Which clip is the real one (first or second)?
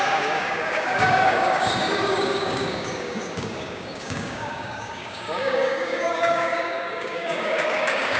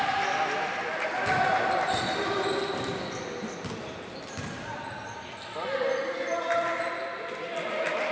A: second